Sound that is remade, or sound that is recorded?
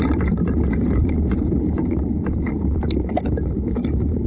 remade